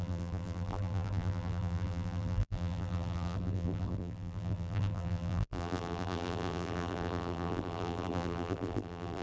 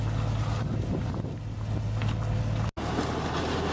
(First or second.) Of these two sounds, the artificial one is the first